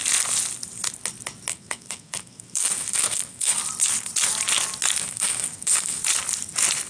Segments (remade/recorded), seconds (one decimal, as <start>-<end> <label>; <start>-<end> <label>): 0.0-1.5 recorded; 1.5-3.6 remade; 3.6-5.0 recorded; 5.0-6.0 remade; 6.0-6.9 recorded